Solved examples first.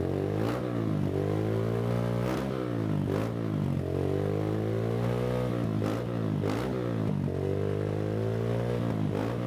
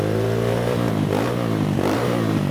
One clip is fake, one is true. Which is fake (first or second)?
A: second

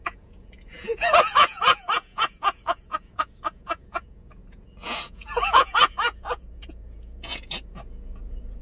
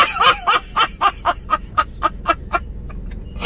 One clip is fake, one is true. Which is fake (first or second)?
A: first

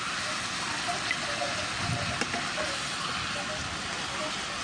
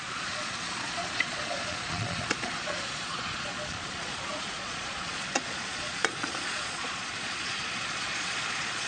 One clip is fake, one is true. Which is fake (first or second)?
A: second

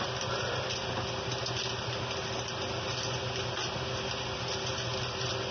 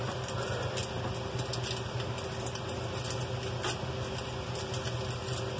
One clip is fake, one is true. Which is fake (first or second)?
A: first